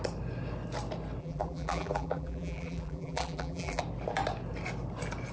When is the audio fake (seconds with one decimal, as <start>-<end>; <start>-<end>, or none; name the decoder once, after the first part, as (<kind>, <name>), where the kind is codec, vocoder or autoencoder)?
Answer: 1.2-3.8 (vocoder, BigVGAN v2)